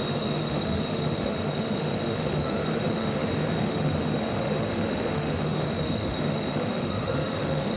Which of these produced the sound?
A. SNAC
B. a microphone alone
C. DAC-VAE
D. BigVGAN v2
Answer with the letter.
C